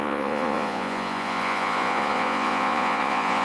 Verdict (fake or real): fake